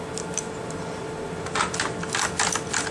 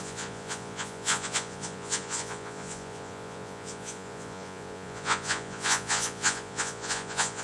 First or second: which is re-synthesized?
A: second